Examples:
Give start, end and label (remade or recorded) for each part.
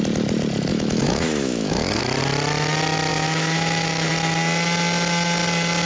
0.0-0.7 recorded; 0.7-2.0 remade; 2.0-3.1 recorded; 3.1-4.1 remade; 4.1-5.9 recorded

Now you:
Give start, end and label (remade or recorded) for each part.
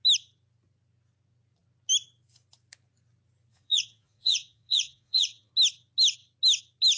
0.0-3.5 recorded; 3.5-5.5 remade; 5.5-7.0 recorded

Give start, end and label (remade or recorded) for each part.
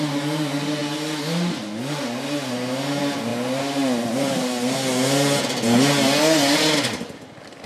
0.0-7.7 recorded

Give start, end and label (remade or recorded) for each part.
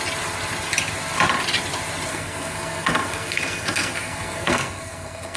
0.0-2.1 recorded; 2.1-5.4 remade